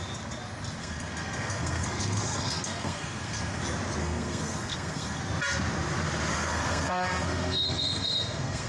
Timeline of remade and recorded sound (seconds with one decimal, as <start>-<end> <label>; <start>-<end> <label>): 0.0-0.8 recorded; 0.8-3.6 remade; 3.6-4.0 recorded; 4.0-5.2 remade; 5.2-6.3 recorded; 6.3-8.7 remade